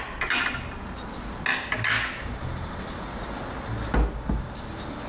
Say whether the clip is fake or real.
real